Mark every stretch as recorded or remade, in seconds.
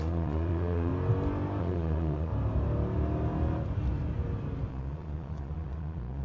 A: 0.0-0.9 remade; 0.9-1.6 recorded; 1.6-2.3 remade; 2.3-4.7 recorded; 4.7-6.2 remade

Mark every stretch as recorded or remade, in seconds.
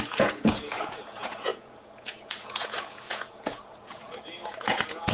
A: 0.0-5.1 remade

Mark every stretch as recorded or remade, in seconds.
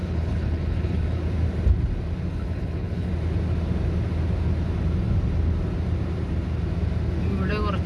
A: 0.0-1.2 remade; 1.2-2.3 recorded; 2.3-3.1 remade; 3.1-7.9 recorded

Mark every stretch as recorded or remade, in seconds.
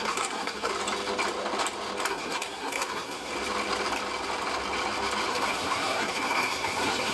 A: 0.0-0.7 remade; 0.7-2.1 recorded; 2.1-3.3 remade; 3.3-5.3 recorded; 5.3-7.1 remade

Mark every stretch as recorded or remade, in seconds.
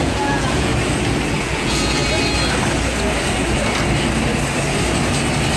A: 0.0-0.7 remade; 0.7-1.4 recorded; 1.4-2.0 remade; 2.0-5.6 recorded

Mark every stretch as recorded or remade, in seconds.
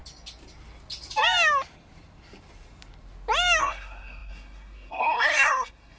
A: 0.0-3.6 recorded; 3.6-6.0 remade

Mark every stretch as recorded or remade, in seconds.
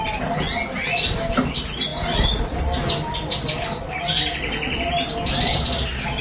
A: 0.0-6.2 recorded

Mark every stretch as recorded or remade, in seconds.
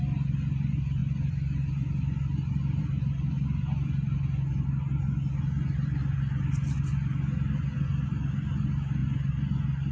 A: 0.0-9.9 recorded